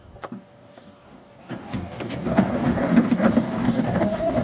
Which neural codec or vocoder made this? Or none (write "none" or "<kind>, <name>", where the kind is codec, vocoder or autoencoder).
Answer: codec, DAC